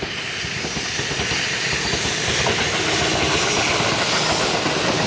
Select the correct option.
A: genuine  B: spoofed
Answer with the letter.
A